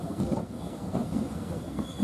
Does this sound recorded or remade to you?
remade